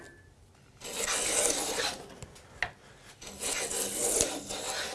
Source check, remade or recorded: recorded